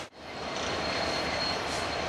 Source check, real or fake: fake